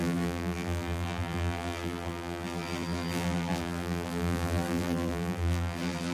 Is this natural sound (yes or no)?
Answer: no